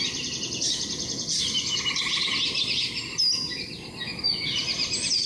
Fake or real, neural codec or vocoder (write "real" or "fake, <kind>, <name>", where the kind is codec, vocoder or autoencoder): real